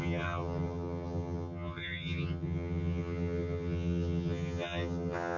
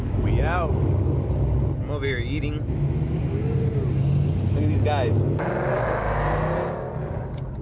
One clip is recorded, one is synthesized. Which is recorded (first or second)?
second